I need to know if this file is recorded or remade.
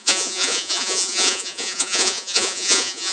remade